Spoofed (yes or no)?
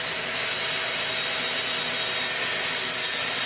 no